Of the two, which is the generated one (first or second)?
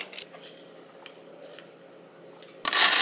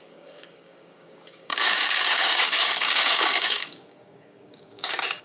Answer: second